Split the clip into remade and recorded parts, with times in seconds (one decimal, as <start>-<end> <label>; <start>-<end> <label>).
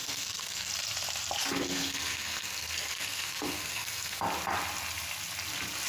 0.0-0.7 remade; 0.7-1.4 recorded; 1.4-4.2 remade; 4.2-5.9 recorded